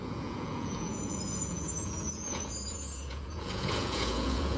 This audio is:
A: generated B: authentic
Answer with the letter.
A